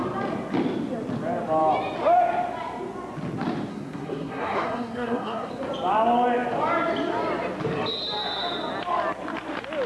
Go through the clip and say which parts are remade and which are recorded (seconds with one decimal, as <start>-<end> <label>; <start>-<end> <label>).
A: 0.0-3.7 recorded; 3.7-5.5 remade; 5.5-9.9 recorded